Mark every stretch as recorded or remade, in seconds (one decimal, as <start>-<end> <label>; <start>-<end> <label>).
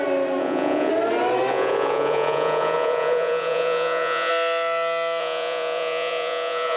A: 0.0-0.4 recorded; 0.4-0.9 remade; 0.9-1.5 recorded; 1.5-4.3 remade; 4.3-5.2 recorded; 5.2-6.8 remade